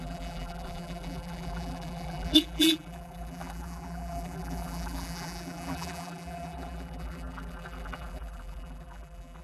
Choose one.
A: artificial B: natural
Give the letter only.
A